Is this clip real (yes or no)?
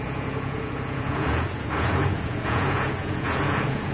no